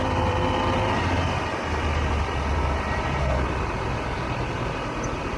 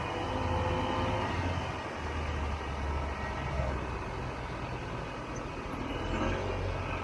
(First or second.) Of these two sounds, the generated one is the first